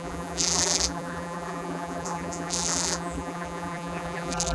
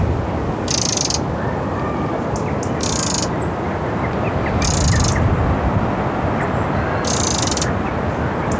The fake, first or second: first